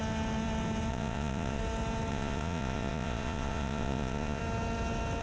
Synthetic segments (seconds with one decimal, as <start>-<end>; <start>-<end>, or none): 0.9-1.6; 2.1-4.4